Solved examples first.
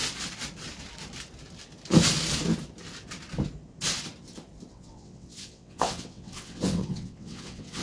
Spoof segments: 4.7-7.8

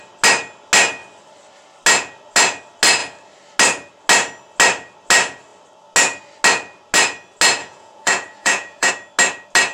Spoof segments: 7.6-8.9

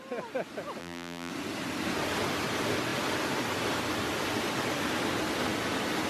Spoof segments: 0.8-1.3

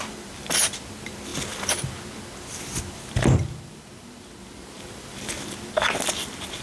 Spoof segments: none